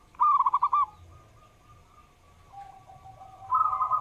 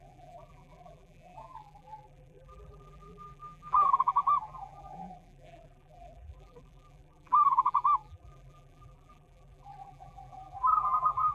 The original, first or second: first